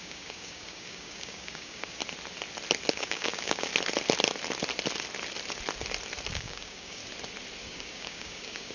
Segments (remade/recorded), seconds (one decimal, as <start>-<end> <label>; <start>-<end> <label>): 0.0-2.0 remade; 2.0-2.9 recorded; 2.9-3.7 remade; 3.7-6.3 recorded; 6.3-7.0 remade; 7.0-7.6 recorded; 7.6-8.7 remade